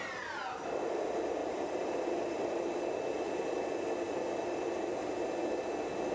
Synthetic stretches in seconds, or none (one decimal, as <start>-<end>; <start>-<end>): 1.4-2.8